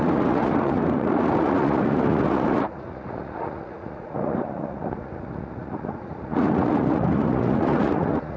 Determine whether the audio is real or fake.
fake